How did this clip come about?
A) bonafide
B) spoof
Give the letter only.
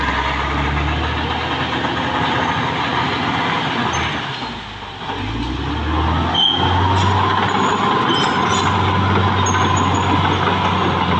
A